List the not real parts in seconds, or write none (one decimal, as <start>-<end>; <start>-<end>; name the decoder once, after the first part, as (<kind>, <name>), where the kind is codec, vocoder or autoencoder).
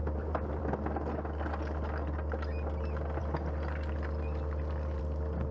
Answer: 0.0-0.6 (vocoder, BigVGAN v2)